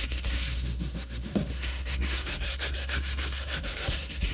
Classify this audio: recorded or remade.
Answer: remade